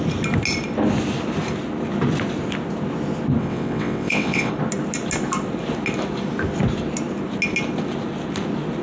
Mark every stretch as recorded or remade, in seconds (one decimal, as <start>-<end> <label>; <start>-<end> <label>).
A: 0.0-3.4 recorded; 3.4-4.5 remade; 4.5-8.8 recorded